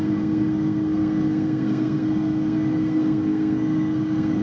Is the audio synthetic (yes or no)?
yes